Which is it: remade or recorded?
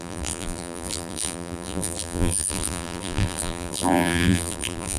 remade